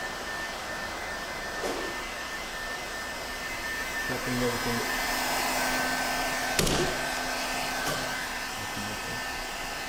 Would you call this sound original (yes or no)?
yes